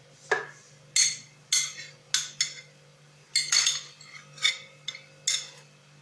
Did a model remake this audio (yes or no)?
no